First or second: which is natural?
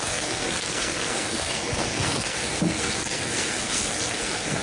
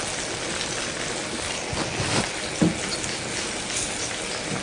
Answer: second